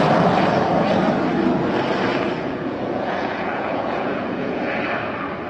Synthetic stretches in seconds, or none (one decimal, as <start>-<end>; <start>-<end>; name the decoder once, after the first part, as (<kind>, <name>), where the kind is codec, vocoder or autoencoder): 2.1-4.7 (vocoder, Vocos)